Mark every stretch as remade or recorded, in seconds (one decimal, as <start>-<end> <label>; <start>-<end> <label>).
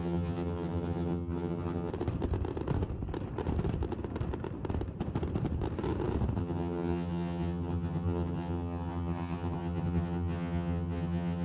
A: 0.0-1.9 remade; 1.9-6.4 recorded; 6.4-11.4 remade